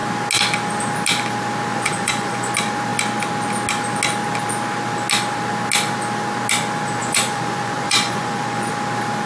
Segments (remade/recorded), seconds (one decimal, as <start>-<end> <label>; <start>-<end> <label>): 0.0-1.7 recorded; 1.7-2.5 remade; 2.5-7.0 recorded; 7.0-8.7 remade; 8.7-9.3 recorded